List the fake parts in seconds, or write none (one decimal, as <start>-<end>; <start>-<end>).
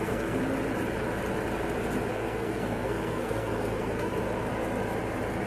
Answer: 0.0-0.4; 2.1-4.1